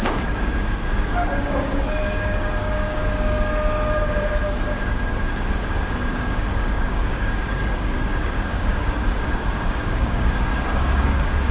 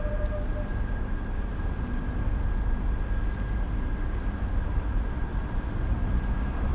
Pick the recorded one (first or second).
second